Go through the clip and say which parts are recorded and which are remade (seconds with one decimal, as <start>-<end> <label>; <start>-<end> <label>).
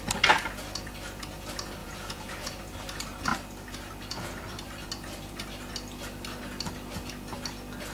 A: 0.0-1.8 recorded; 1.8-2.6 remade; 2.6-7.9 recorded